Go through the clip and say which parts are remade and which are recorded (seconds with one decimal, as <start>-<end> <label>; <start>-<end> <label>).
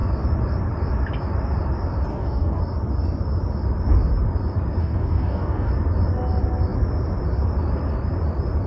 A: 0.0-2.1 recorded; 2.1-2.6 remade; 2.6-4.8 recorded; 4.8-5.7 remade; 5.7-8.7 recorded